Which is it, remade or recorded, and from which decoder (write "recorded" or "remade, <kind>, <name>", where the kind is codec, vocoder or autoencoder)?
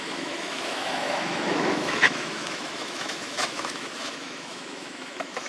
remade, autoencoder, DAC-VAE